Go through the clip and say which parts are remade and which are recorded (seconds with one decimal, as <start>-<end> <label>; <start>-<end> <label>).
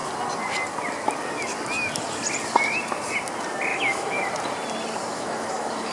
0.0-3.7 recorded; 3.7-4.3 remade; 4.3-5.1 recorded; 5.1-5.9 remade